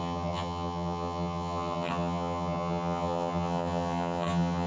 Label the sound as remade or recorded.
remade